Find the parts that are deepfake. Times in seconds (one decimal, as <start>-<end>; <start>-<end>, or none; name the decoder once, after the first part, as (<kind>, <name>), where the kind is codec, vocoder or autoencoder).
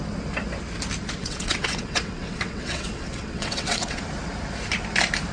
1.2-4.0 (vocoder, WaveNeXt)